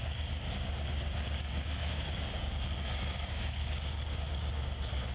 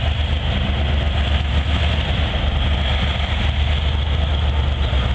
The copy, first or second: first